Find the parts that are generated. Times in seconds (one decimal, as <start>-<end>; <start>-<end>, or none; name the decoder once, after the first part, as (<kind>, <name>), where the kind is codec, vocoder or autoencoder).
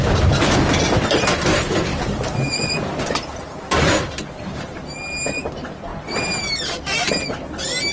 1.9-2.9 (vocoder, BigVGAN v2); 5.9-7.1